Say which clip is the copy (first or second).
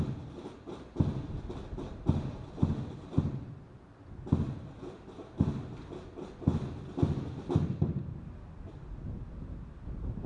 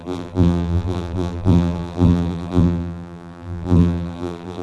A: second